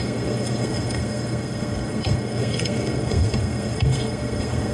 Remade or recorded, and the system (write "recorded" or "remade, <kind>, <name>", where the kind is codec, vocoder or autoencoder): remade, codec, SNAC